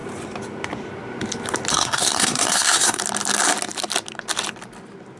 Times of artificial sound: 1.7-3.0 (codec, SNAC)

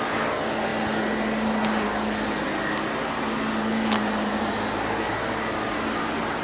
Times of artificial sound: none

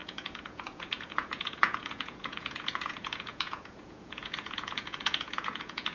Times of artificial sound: 0.0-5.9 (vocoder, Vocos)